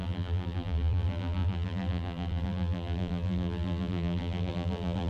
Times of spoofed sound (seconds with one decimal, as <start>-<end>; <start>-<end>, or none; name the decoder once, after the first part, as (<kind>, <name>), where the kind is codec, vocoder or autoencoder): 0.0-5.1 (vocoder, BigVGAN v2)